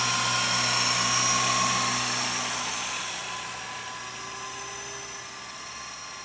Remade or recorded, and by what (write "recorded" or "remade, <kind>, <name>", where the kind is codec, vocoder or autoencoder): recorded